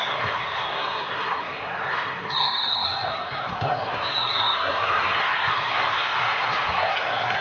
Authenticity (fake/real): fake